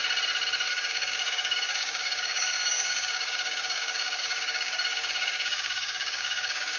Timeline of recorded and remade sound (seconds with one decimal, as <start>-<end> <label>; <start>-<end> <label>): 0.0-0.7 recorded; 0.7-6.8 remade